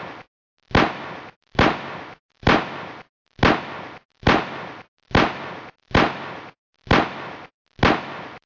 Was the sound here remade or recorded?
recorded